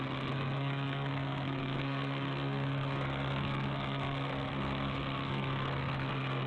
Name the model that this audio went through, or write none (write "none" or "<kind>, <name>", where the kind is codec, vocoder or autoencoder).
codec, SNAC